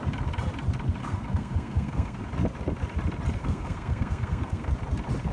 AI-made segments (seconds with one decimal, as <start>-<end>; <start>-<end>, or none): 1.0-2.2; 3.4-4.7